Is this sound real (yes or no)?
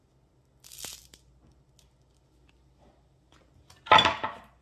yes